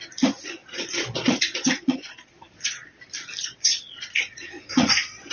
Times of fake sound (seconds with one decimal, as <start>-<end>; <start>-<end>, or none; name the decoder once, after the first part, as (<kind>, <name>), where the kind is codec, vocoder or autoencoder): 0.6-3.0 (vocoder, Vocos); 3.4-5.3